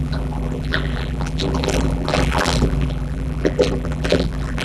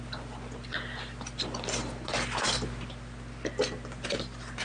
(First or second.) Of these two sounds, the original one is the second